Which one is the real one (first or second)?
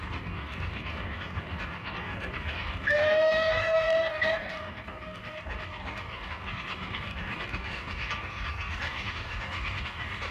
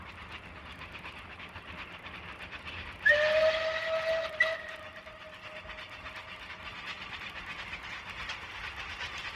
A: second